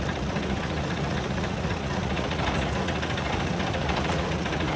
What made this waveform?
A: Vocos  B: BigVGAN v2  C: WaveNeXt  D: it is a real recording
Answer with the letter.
A